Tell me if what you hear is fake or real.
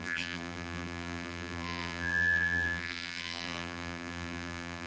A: fake